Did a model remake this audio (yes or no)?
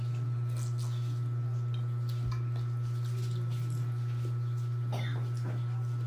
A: no